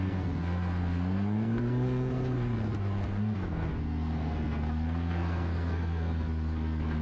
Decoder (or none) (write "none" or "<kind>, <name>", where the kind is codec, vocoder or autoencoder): codec, SNAC